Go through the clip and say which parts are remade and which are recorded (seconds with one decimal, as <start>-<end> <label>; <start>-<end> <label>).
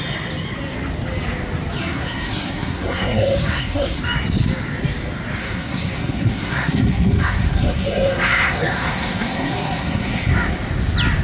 0.0-1.8 recorded; 1.8-4.0 remade; 4.0-5.4 recorded; 5.4-10.3 remade; 10.3-11.2 recorded